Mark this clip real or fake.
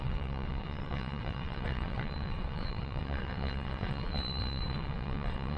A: fake